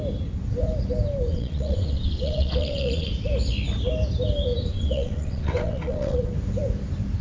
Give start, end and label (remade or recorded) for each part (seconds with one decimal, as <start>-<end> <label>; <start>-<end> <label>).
0.0-1.3 recorded; 1.3-3.1 remade; 3.1-4.7 recorded; 4.7-6.2 remade; 6.2-7.2 recorded